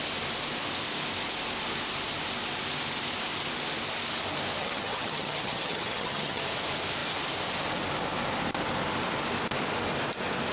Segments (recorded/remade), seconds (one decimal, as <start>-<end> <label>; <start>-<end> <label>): 0.0-4.6 recorded; 4.6-6.4 remade; 6.4-10.5 recorded